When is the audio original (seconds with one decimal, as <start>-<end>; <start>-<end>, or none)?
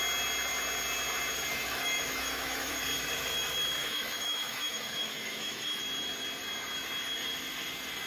0.0-1.5; 2.7-3.8; 5.8-8.1